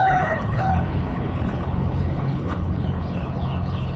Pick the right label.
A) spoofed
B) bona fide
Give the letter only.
A